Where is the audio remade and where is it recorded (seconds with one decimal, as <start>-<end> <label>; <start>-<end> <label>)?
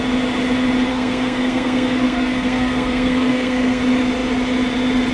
0.0-0.9 recorded; 0.9-3.8 remade; 3.8-5.1 recorded